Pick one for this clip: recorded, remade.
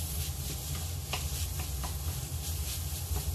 recorded